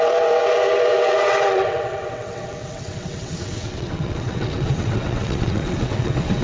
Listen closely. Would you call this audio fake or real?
fake